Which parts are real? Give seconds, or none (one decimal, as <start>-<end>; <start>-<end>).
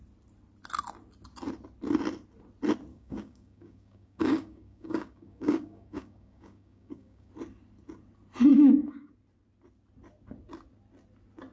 0.0-2.9; 7.3-8.5; 9.1-11.5